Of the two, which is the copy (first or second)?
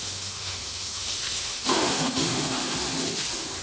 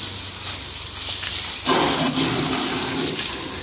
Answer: first